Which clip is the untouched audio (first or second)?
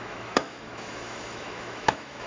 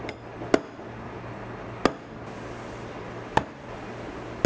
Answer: second